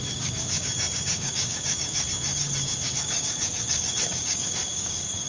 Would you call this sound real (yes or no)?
no